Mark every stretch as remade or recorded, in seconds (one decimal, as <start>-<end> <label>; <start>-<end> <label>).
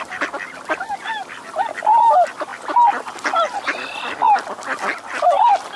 0.0-5.8 recorded